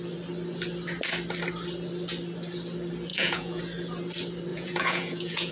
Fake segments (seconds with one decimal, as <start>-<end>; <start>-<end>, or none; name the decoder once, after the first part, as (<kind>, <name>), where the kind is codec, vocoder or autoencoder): 3.1-3.6 (vocoder, Vocos); 4.5-5.5